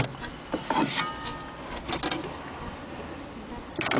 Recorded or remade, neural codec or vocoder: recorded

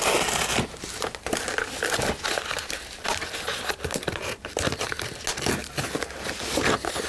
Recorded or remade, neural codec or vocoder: recorded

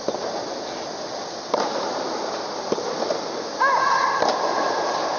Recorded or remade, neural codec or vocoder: recorded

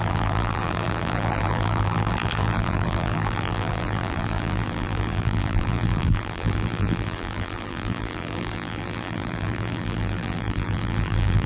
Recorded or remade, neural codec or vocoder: remade, vocoder, BigVGAN v2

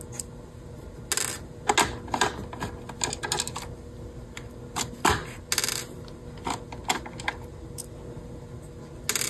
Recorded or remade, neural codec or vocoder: recorded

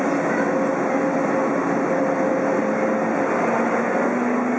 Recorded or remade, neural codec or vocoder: recorded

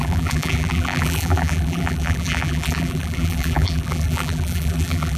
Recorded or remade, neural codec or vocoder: remade, vocoder, BigVGAN v2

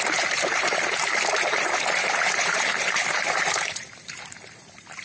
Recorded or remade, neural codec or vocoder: remade, vocoder, BigVGAN v2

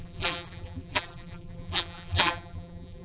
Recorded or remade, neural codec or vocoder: remade, vocoder, BigVGAN v2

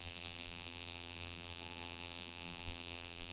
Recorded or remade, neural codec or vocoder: remade, vocoder, BigVGAN v2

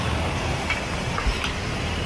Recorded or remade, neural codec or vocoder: remade, vocoder, BigVGAN v2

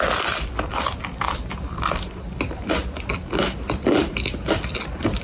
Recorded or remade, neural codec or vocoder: recorded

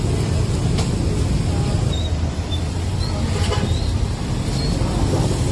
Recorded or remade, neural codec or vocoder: recorded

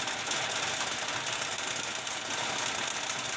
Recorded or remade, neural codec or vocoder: recorded